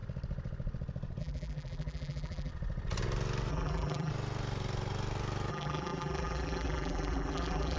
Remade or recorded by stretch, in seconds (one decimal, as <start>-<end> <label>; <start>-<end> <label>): 0.0-1.2 recorded; 1.2-2.5 remade; 2.5-3.5 recorded; 3.5-4.1 remade; 4.1-5.5 recorded; 5.5-7.8 remade